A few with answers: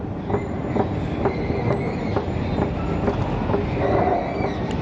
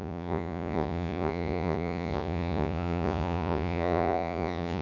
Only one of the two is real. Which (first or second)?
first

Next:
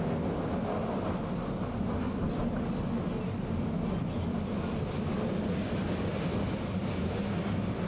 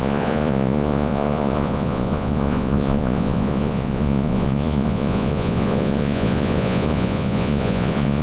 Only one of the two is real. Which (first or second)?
first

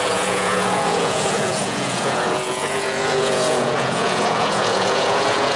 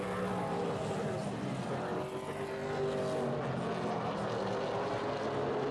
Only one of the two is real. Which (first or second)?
second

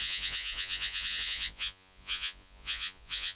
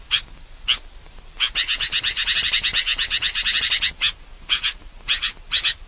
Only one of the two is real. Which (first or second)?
second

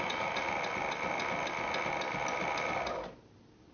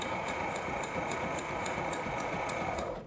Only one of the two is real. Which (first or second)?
first